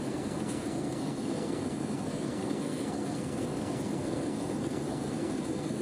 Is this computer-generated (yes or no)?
yes